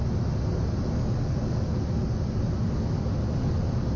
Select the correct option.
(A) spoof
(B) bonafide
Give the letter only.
B